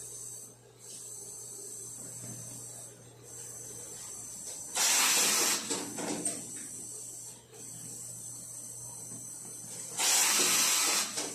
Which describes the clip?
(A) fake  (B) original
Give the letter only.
B